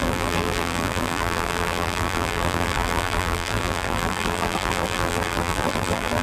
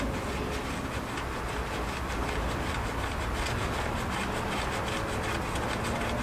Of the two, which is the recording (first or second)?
second